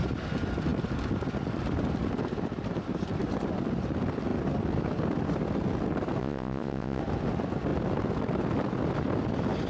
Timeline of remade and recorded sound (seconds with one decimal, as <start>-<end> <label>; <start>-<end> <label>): 0.0-6.2 recorded; 6.2-7.0 remade; 7.0-9.7 recorded

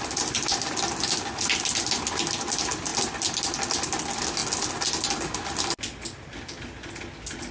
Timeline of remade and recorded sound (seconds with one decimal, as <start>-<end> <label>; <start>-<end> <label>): 0.0-7.5 recorded

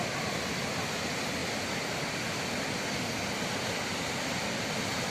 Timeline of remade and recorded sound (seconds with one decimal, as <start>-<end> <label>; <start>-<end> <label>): 0.0-5.1 recorded

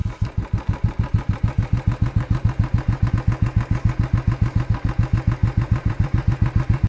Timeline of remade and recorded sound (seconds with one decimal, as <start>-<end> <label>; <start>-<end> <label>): 0.0-3.1 remade; 3.1-5.4 recorded; 5.4-6.9 remade

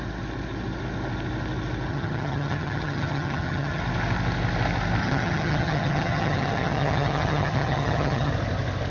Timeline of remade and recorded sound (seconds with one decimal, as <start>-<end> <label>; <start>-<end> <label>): 0.0-1.9 recorded; 1.9-3.8 remade; 3.8-5.0 recorded; 5.0-8.3 remade; 8.3-8.9 recorded